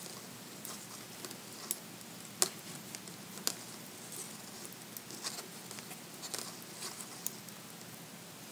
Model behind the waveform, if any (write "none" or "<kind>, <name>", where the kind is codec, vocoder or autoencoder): none